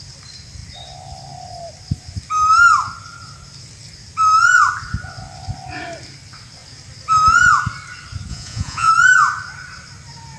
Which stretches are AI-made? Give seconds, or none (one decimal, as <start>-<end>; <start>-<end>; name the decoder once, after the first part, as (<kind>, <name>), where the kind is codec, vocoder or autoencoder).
8.3-8.9 (vocoder, Vocos)

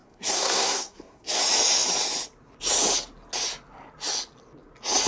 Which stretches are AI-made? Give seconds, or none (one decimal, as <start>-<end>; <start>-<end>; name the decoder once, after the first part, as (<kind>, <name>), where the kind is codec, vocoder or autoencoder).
0.0-1.4 (codec, SNAC)

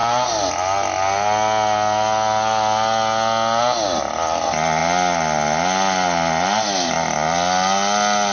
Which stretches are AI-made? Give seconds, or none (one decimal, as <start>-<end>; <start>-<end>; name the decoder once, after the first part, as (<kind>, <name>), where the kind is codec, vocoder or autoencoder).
none